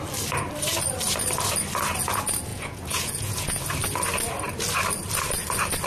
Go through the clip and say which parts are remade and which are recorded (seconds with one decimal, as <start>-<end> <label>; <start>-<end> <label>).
0.0-2.5 recorded; 2.5-3.6 remade; 3.6-5.9 recorded